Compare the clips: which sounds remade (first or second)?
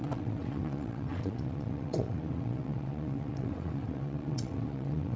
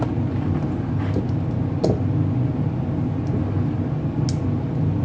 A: first